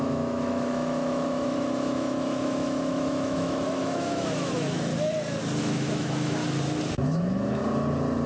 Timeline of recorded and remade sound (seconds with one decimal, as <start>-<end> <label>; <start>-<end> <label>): 0.0-4.9 remade; 4.9-5.6 recorded; 5.6-6.4 remade; 6.4-6.9 recorded; 6.9-7.6 remade; 7.6-8.3 recorded